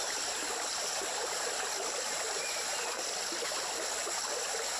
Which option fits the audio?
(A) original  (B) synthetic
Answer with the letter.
A